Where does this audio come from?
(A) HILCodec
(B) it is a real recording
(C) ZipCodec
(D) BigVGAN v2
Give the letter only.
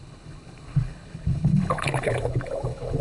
A